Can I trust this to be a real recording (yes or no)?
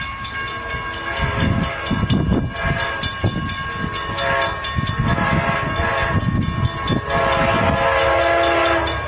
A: yes